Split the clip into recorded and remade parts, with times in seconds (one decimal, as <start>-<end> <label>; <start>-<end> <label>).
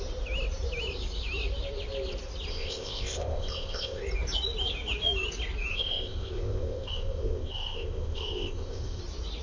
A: 0.0-2.5 recorded; 2.5-4.0 remade; 4.0-5.7 recorded; 5.7-9.0 remade; 9.0-9.4 recorded